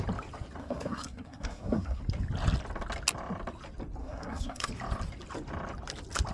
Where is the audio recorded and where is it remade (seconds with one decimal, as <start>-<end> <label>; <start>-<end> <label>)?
0.0-0.6 recorded; 0.6-2.0 remade; 2.0-4.0 recorded; 4.0-4.7 remade; 4.7-6.3 recorded